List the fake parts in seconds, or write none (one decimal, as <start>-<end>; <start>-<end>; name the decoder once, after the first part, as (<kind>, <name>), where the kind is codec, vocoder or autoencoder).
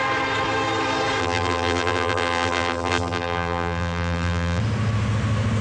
1.2-4.6 (vocoder, BigVGAN v2)